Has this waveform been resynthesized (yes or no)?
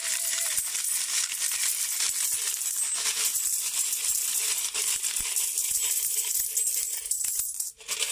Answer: yes